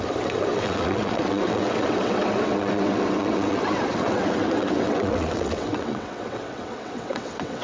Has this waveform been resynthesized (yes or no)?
yes